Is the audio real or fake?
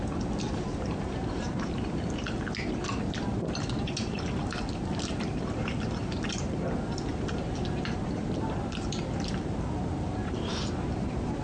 fake